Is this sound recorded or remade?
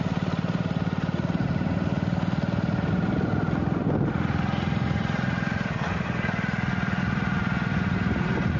recorded